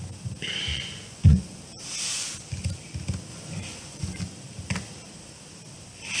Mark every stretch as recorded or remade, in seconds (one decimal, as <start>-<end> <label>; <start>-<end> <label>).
0.0-0.7 recorded; 0.7-1.6 remade; 1.6-3.3 recorded; 3.3-4.2 remade; 4.2-6.2 recorded